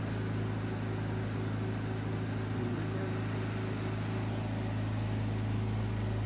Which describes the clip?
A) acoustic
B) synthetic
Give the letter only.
A